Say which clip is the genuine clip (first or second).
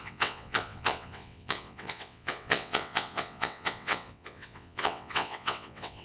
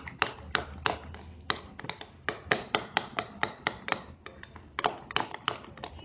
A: second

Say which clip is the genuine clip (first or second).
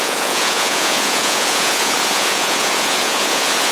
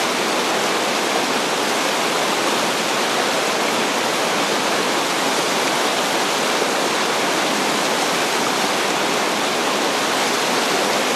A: second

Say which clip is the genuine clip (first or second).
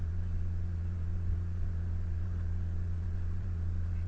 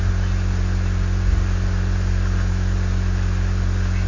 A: second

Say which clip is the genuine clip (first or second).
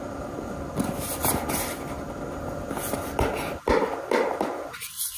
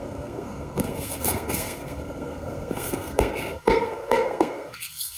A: first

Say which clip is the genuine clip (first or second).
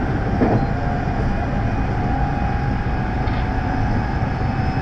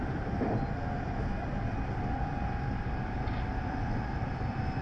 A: first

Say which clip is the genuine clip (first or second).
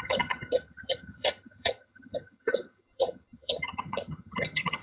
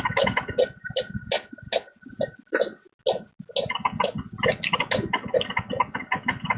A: second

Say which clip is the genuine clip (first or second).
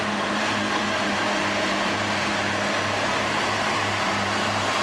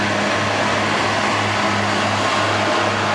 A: second